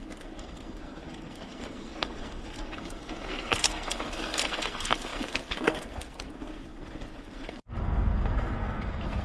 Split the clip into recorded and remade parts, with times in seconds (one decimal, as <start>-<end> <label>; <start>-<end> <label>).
0.0-9.2 remade